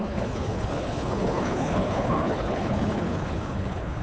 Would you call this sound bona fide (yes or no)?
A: no